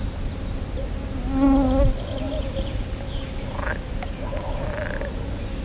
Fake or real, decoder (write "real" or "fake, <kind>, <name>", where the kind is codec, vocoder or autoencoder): real